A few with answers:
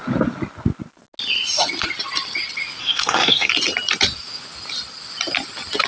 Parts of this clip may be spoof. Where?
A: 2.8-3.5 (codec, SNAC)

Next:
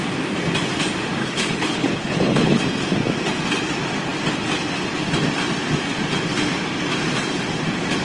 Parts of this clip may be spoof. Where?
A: 1.2-2.6 (codec, HILCodec)

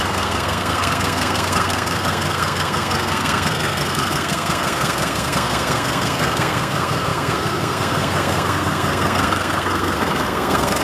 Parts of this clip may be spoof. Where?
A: 0.0-10.8 (codec, SNAC)

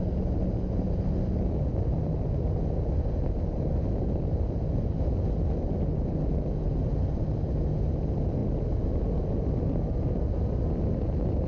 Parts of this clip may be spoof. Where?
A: none

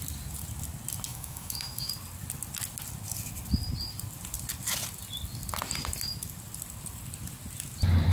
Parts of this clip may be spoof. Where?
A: 1.1-1.9 (autoencoder, DAC-VAE)